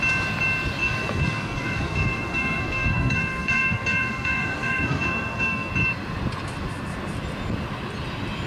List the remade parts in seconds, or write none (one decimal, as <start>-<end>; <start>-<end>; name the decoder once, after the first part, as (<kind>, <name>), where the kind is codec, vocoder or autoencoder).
0.8-5.7 (codec, SNAC)